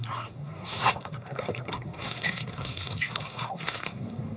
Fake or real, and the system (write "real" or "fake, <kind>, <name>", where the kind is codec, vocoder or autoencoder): fake, codec, SNAC